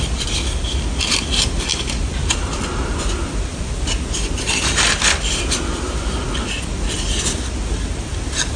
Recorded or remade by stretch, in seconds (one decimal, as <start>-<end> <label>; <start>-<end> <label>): 0.0-8.6 recorded